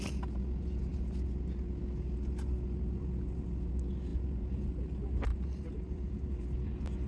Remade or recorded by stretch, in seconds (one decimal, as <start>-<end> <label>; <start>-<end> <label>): 0.0-5.3 recorded; 5.3-6.3 remade; 6.3-7.1 recorded